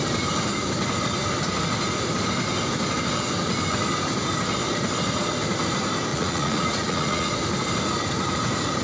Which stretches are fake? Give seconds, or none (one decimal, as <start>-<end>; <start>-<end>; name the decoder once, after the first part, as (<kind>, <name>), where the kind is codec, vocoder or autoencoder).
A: 6.1-7.3 (vocoder, Vocos)

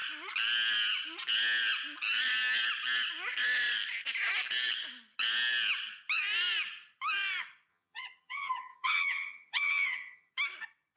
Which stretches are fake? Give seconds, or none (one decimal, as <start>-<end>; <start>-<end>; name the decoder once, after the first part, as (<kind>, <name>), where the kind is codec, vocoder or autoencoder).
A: 7.7-10.3 (vocoder, HiFi-GAN)

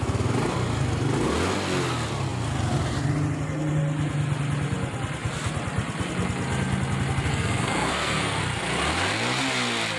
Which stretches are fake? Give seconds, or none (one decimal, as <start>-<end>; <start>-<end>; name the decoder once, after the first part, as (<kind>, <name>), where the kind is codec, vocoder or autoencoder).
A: 7.3-8.4 (codec, SNAC)

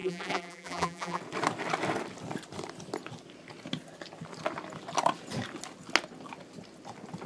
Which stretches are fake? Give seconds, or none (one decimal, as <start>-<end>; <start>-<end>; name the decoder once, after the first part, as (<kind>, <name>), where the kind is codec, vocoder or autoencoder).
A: 0.0-1.2 (vocoder, BigVGAN v2)

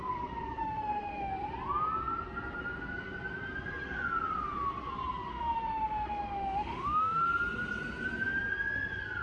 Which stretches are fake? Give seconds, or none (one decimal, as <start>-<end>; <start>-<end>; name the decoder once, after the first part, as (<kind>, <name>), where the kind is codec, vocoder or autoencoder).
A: 0.6-1.3 (autoencoder, DAC-VAE); 5.3-7.2

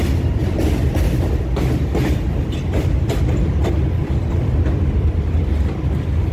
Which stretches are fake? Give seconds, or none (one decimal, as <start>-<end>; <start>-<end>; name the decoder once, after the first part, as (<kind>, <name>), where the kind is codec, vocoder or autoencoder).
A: none

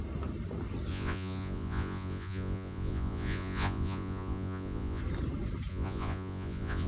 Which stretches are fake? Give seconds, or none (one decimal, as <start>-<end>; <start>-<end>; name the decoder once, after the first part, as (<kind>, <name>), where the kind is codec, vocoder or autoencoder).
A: 0.9-5.0 (vocoder, Vocos); 5.7-6.9

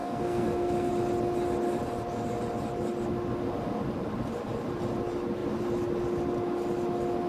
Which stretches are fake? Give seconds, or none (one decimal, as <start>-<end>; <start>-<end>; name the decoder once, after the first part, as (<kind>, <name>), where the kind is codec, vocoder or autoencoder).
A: 0.0-0.9 (codec, SNAC)